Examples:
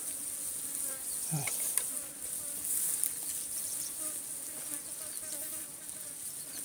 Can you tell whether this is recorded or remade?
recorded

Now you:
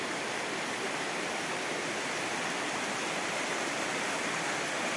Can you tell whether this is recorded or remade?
recorded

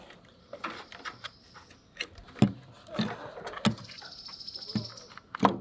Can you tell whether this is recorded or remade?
recorded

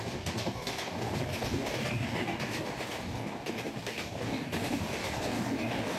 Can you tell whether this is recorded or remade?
remade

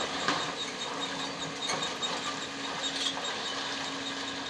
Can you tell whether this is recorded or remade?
recorded